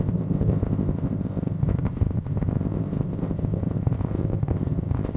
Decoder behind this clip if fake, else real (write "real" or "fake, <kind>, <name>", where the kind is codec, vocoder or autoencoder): fake, codec, ZipCodec